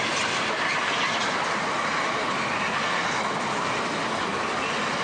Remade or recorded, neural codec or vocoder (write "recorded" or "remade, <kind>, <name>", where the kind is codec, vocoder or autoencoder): remade, vocoder, BigVGAN v2